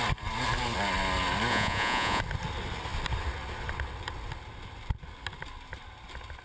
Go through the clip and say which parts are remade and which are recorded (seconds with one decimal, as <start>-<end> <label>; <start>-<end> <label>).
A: 0.0-1.5 recorded; 1.5-2.2 remade; 2.2-6.4 recorded